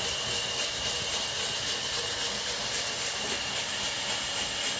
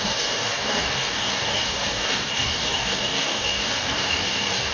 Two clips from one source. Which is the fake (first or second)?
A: second